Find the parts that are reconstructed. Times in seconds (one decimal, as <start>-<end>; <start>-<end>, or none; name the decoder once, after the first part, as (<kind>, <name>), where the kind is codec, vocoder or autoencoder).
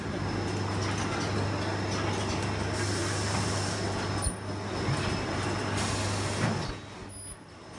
none